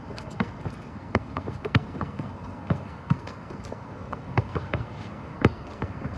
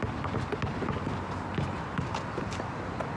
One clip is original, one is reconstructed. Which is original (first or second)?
second